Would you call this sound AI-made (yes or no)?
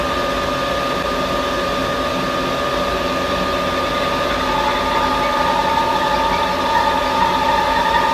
no